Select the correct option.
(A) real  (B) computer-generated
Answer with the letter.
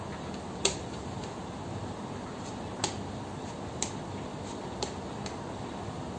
A